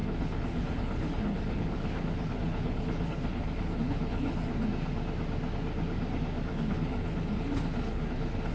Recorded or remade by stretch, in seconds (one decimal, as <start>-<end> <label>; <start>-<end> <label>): 0.0-4.5 remade; 4.5-6.5 recorded; 6.5-8.5 remade